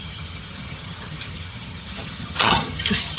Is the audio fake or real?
fake